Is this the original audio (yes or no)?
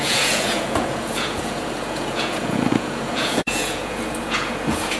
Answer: no